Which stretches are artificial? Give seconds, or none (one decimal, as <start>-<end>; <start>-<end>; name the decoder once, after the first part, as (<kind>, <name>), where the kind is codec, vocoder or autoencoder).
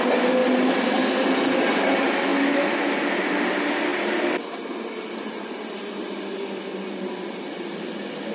none